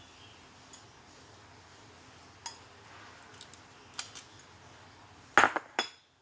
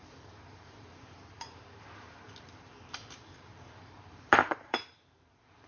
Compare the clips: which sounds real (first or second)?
first